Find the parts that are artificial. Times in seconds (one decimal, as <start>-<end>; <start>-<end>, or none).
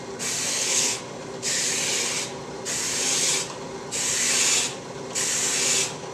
0.5-1.0